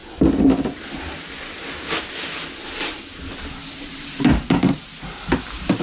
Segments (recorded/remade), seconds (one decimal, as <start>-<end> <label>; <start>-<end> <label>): 0.0-3.3 recorded; 3.3-5.8 remade